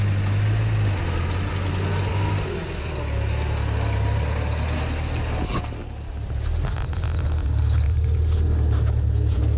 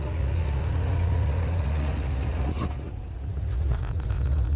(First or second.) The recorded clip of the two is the first